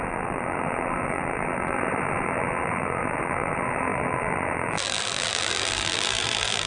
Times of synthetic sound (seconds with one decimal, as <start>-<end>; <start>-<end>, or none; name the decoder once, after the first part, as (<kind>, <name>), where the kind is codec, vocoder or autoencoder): 0.0-6.7 (vocoder, BigVGAN v2)